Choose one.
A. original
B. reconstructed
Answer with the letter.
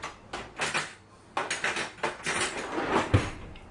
A